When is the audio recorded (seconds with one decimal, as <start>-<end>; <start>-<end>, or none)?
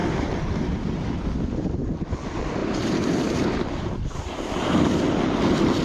1.9-2.6; 4.8-5.8